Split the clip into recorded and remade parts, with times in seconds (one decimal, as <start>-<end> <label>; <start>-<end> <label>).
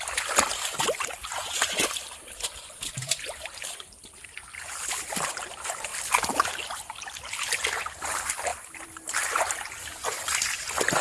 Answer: 0.0-11.0 remade